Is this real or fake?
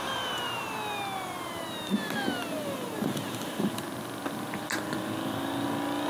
real